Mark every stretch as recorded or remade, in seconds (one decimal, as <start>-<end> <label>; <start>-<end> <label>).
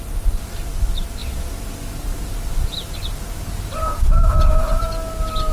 0.0-5.5 recorded